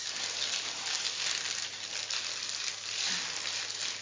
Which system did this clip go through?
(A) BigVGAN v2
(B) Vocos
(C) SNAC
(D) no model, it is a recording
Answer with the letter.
D